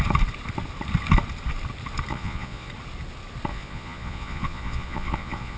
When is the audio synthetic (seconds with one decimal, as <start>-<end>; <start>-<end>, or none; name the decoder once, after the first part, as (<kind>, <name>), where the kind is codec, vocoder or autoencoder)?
2.1-2.7 (vocoder, Vocos); 3.5-5.6